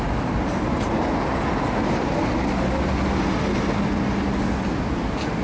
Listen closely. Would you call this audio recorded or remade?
recorded